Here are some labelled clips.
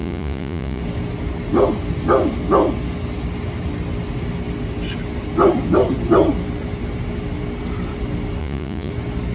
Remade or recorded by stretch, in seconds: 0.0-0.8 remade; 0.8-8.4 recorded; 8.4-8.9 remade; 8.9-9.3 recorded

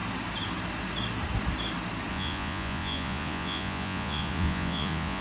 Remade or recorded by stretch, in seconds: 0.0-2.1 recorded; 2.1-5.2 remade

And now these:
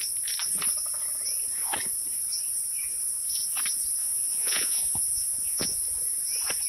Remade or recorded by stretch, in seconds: 0.0-4.0 recorded; 4.0-5.8 remade; 5.8-6.7 recorded

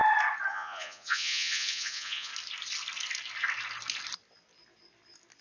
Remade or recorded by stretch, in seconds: 0.0-0.5 recorded; 0.5-2.3 remade; 2.3-5.4 recorded

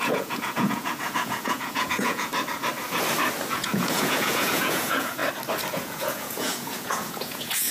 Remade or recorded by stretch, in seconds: 0.0-2.3 remade; 2.3-3.5 recorded; 3.5-5.2 remade; 5.2-5.7 recorded; 5.7-7.7 remade

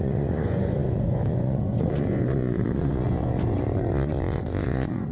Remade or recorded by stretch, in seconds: 0.0-5.1 remade

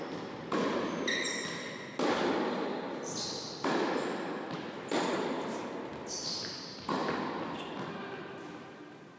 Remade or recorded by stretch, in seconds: 0.0-9.2 recorded